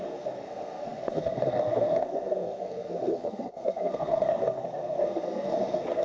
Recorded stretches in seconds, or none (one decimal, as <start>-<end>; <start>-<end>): none